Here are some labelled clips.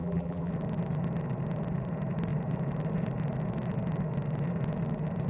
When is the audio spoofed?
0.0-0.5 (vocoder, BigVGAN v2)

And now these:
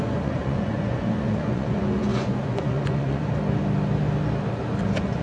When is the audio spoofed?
0.0-3.2 (vocoder, Vocos); 4.8-5.2

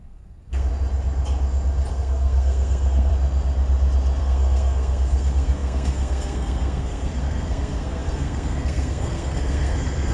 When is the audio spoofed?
0.0-0.7 (codec, SNAC); 1.9-3.1; 4.2-10.1

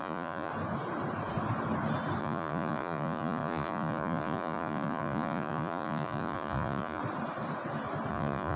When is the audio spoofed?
0.0-0.5 (vocoder, Vocos); 2.2-7.0; 8.1-8.6